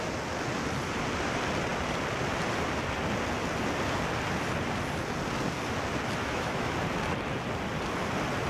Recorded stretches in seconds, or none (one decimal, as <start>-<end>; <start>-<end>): 0.0-6.2; 6.7-8.5